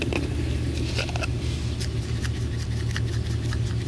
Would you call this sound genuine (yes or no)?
yes